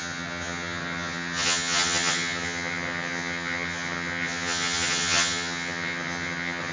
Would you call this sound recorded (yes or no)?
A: no